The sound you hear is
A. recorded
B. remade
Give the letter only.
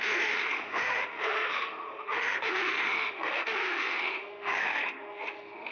B